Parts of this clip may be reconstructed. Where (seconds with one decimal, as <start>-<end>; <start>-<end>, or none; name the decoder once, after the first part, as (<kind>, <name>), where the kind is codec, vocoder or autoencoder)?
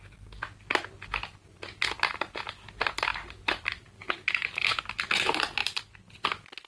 none